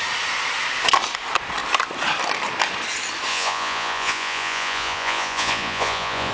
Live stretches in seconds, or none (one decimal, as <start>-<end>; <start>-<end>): 0.0-3.3